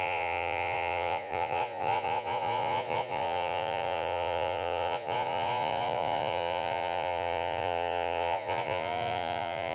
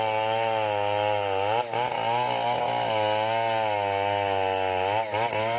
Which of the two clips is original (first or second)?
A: second